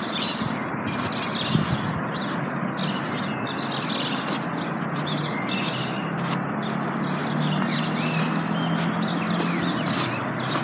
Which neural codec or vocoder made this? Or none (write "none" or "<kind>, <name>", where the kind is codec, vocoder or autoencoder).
none